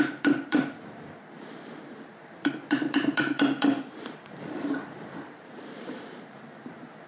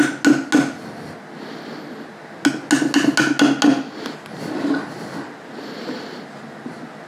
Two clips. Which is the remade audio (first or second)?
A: first